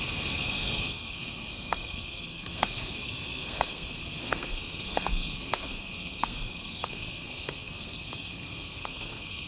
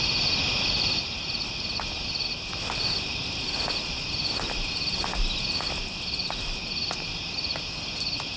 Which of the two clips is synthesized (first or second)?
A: first